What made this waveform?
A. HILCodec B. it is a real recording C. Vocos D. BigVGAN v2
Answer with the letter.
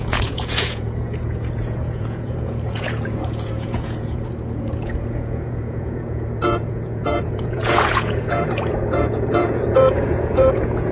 C